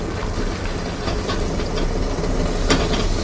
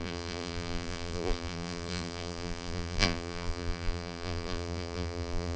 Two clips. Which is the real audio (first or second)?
first